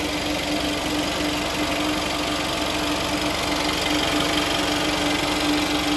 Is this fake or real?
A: real